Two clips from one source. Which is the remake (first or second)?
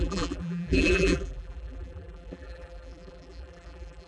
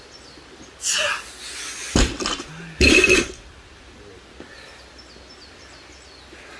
first